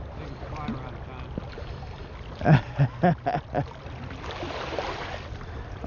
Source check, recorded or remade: recorded